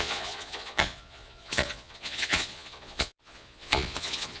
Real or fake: fake